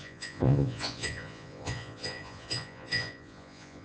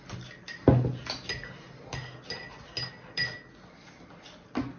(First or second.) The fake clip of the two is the first